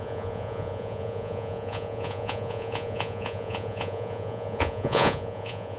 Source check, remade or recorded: remade